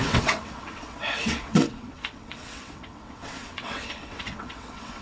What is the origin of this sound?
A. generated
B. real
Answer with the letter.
A